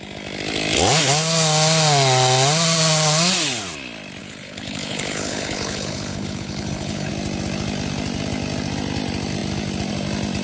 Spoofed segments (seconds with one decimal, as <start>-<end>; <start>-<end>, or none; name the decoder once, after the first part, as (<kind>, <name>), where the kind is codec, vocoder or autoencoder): 4.2-7.1 (codec, HILCodec)